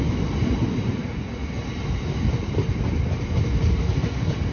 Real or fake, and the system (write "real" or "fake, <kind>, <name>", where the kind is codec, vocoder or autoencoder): real